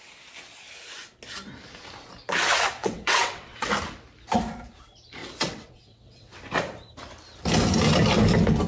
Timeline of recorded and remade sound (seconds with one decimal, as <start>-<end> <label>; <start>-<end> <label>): 0.0-2.8 recorded; 2.8-3.7 remade; 3.7-5.2 recorded; 5.2-6.4 remade; 6.4-8.7 recorded